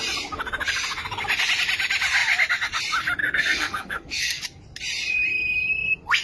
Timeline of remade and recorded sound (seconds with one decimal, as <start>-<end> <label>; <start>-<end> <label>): 0.0-3.2 recorded; 3.2-4.4 remade; 4.4-6.2 recorded